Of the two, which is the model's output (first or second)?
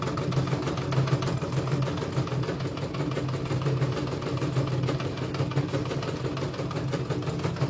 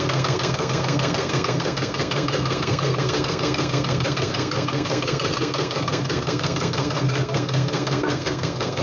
second